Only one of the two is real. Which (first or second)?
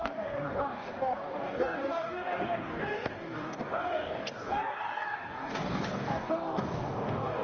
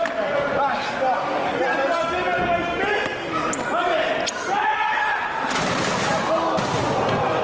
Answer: second